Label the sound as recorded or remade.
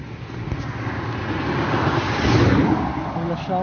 recorded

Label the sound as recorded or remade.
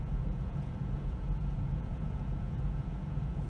remade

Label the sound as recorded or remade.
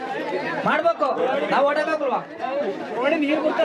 remade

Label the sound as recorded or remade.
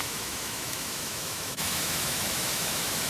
remade